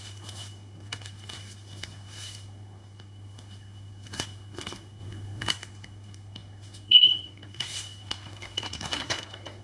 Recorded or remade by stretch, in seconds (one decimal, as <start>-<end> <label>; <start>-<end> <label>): 0.0-9.6 remade